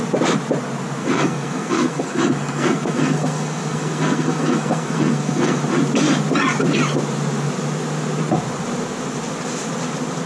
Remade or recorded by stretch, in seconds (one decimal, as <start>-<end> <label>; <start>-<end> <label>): 0.0-1.0 recorded; 1.0-5.6 remade; 5.6-10.3 recorded